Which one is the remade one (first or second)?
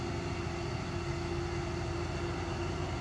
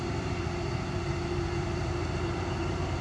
second